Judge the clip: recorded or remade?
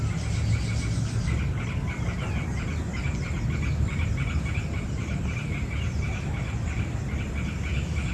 recorded